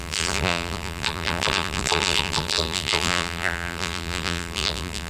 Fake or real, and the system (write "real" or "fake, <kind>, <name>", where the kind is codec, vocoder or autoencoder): fake, vocoder, BigVGAN v2